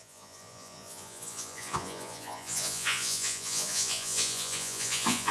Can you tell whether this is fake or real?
fake